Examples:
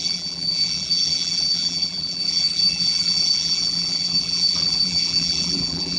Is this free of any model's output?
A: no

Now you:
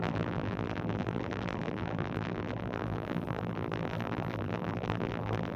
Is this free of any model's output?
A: no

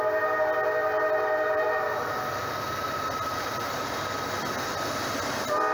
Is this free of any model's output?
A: yes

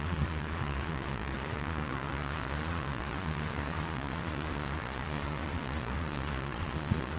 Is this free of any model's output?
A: no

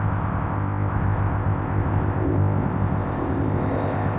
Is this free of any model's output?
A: no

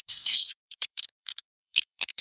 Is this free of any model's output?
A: no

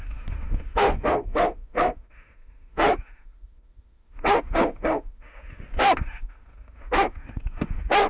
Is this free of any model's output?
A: no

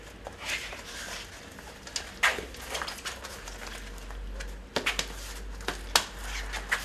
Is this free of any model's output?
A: yes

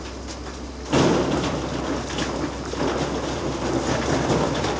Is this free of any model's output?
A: yes